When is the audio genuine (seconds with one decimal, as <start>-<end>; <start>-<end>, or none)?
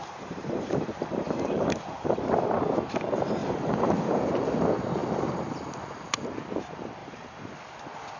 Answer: 2.2-3.4; 4.3-7.0; 7.5-8.2